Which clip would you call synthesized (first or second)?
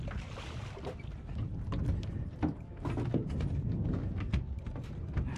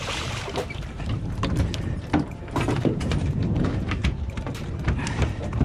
second